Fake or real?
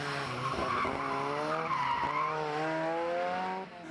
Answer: real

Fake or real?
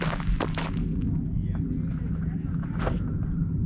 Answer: real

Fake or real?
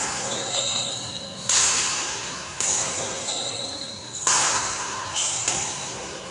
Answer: fake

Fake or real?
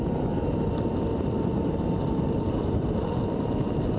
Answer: real